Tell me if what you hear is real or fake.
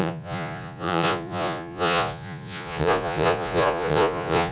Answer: fake